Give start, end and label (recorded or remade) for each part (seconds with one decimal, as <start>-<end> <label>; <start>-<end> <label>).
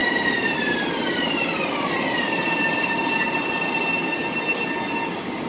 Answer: 0.0-3.3 remade; 3.3-5.5 recorded